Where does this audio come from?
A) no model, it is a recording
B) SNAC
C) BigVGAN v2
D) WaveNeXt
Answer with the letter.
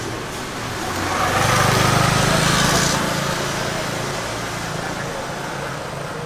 A